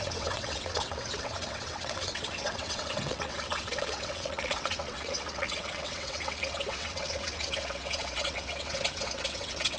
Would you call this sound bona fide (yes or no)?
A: no